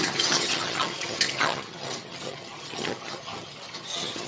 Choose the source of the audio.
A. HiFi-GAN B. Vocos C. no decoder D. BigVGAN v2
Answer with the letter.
A